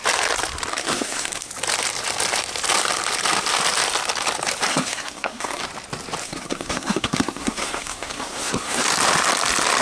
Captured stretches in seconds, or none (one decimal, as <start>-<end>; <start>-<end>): 0.0-0.7; 1.5-4.7; 5.6-6.2; 8.8-9.8